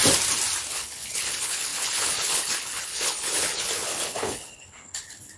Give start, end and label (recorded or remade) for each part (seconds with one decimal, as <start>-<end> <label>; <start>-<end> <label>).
0.0-0.7 recorded; 0.7-5.4 remade